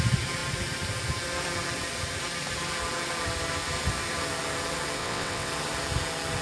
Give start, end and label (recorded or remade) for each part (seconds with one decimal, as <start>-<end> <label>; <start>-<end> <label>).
0.0-5.0 recorded; 5.0-5.5 remade; 5.5-6.4 recorded